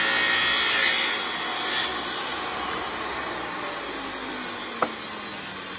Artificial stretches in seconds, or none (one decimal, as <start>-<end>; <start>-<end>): none